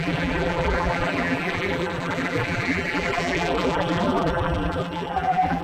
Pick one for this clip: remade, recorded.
remade